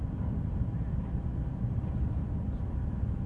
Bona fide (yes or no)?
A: no